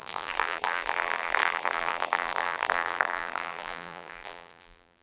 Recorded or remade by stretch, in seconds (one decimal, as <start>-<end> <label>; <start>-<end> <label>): 0.0-5.0 remade